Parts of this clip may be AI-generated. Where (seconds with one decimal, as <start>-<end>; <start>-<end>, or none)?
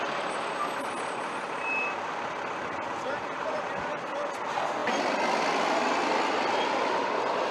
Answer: none